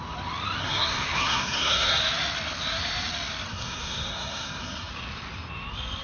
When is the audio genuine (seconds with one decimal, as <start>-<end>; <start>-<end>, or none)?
0.0-0.6; 2.0-3.5; 4.9-6.0